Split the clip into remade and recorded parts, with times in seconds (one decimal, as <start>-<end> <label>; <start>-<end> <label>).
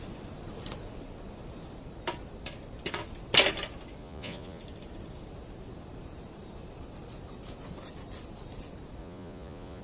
0.0-4.0 recorded; 4.0-4.6 remade; 4.6-9.0 recorded; 9.0-9.8 remade